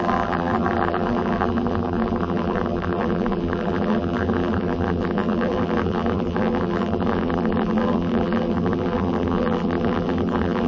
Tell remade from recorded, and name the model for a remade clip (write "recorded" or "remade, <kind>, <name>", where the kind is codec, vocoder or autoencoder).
remade, vocoder, BigVGAN v2